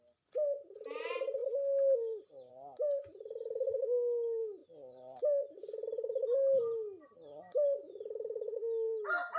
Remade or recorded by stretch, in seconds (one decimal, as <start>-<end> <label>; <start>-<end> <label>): 0.0-9.4 recorded